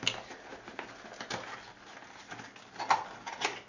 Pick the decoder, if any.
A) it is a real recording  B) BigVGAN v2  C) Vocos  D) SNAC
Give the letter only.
A